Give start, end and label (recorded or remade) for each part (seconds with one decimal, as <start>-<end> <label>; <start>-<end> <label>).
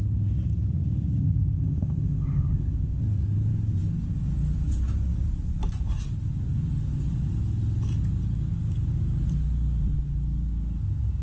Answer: 0.0-1.2 recorded; 1.2-3.0 remade; 3.0-11.2 recorded